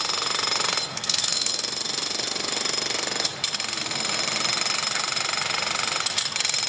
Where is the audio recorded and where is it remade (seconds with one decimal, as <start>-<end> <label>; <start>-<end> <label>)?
0.0-0.9 recorded; 0.9-1.5 remade; 1.5-6.7 recorded